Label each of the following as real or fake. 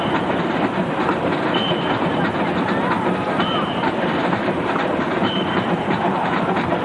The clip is fake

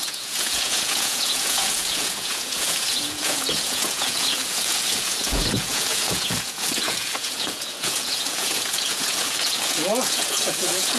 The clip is fake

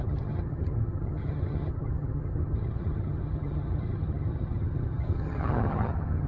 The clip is fake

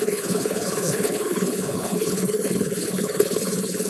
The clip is fake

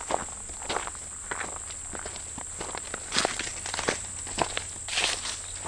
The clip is real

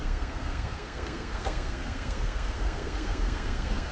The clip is fake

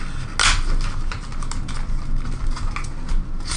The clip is real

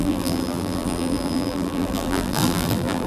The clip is fake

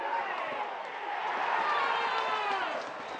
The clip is real